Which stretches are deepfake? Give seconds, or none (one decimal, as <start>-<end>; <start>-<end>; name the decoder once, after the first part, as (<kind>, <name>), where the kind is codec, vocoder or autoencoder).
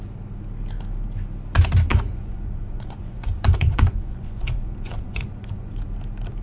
1.9-5.7 (vocoder, Vocos)